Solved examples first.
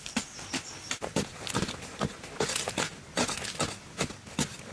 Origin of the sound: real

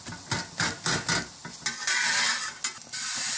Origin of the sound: real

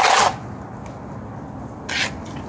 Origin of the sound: real